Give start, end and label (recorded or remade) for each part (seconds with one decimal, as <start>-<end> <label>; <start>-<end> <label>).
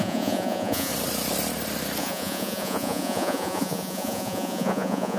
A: 0.0-0.9 remade; 0.9-2.0 recorded; 2.0-5.2 remade